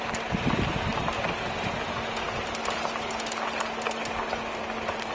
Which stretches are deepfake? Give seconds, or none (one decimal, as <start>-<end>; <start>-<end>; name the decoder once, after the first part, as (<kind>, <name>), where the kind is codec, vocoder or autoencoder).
none